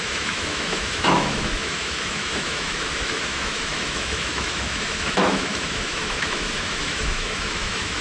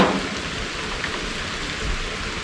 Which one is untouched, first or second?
second